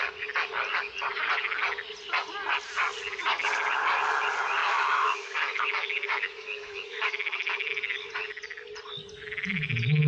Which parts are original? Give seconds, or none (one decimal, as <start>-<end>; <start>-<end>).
0.0-4.6; 7.7-10.1